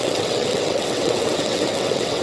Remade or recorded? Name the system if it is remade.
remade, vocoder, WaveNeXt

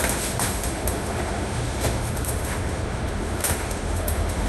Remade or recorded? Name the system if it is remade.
remade, autoencoder, DAC-VAE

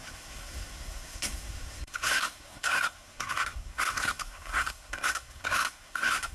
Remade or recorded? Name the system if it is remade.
remade, codec, SNAC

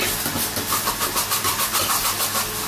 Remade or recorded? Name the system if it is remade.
recorded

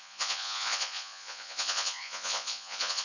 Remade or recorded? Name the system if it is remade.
remade, vocoder, Vocos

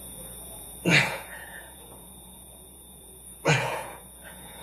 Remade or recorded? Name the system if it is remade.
remade, vocoder, Vocos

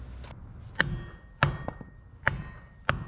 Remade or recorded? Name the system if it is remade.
recorded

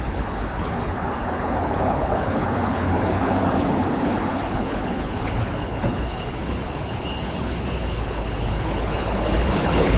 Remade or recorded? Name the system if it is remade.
remade, codec, HILCodec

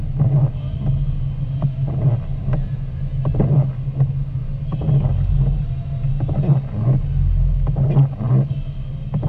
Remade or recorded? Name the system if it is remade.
recorded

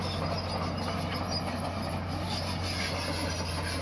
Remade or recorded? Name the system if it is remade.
recorded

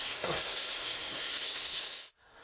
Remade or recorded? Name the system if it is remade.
remade, codec, SNAC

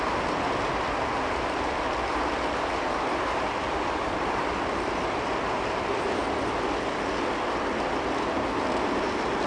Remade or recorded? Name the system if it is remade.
recorded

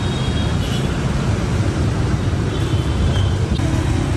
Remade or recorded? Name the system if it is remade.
recorded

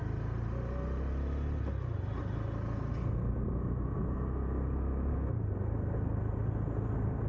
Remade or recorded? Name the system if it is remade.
recorded